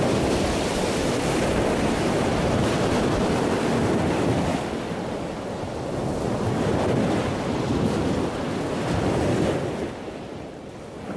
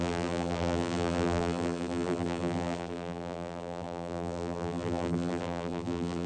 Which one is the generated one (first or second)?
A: second